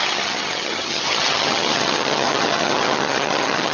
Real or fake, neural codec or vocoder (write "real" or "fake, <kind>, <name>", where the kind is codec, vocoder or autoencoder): fake, vocoder, HiFi-GAN